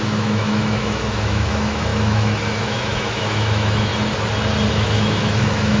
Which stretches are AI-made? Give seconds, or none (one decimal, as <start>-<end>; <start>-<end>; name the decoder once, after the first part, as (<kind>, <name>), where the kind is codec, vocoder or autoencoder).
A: 0.0-3.9 (autoencoder, DAC-VAE); 4.7-5.8